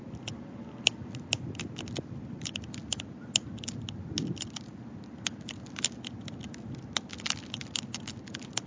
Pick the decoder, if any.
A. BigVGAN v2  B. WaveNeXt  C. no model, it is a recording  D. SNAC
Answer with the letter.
C